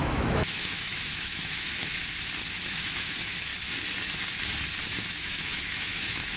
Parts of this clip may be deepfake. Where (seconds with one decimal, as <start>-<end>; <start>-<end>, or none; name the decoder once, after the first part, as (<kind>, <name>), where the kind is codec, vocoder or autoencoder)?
0.0-1.9 (autoencoder, DAC-VAE); 2.7-3.5; 5.1-6.4